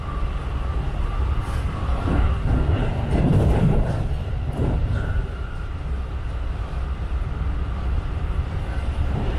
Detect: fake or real real